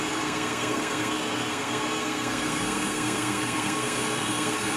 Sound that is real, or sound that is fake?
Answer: fake